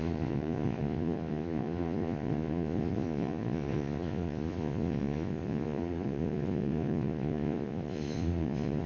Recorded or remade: remade